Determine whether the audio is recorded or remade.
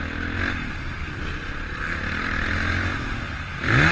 recorded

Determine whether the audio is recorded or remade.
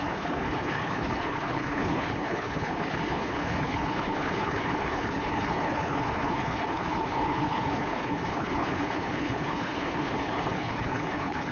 remade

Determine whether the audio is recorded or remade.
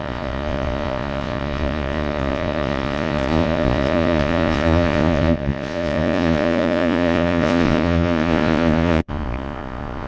remade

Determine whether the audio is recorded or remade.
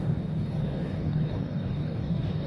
remade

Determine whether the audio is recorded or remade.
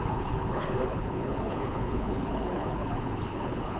remade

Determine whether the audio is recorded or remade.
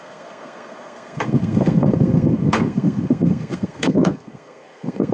remade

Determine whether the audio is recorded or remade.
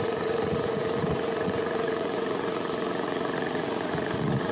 remade